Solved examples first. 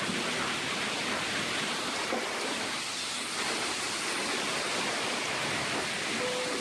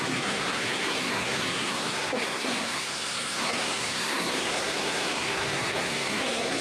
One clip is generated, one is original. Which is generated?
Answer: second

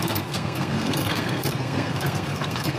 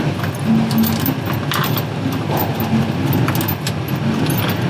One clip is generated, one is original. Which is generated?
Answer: first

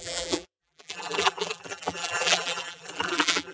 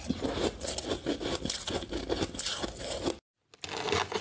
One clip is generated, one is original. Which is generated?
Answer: first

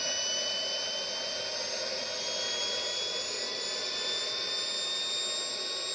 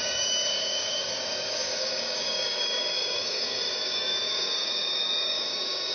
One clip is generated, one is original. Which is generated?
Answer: second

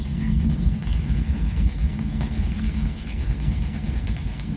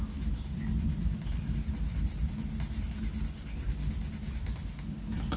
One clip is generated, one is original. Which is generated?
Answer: first